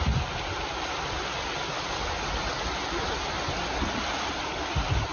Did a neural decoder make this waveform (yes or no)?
no